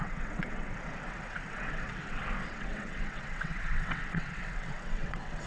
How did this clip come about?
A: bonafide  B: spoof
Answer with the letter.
B